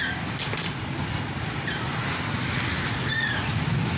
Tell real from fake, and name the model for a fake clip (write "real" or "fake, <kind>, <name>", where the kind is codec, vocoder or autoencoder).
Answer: real